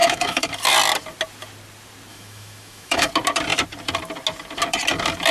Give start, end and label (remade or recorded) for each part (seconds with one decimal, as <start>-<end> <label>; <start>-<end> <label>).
0.0-0.5 remade; 0.5-2.1 recorded; 2.1-3.1 remade; 3.1-5.3 recorded